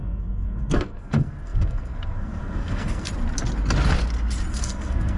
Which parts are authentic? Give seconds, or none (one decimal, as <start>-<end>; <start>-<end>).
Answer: 3.1-4.5